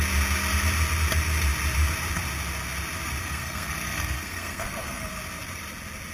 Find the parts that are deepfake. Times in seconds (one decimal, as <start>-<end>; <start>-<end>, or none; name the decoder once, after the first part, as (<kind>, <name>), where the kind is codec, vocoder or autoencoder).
3.2-5.1 (codec, SNAC)